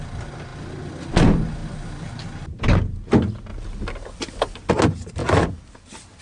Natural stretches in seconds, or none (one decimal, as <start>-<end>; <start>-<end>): 0.0-3.5; 4.7-5.2